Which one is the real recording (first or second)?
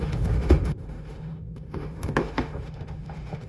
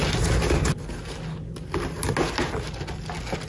second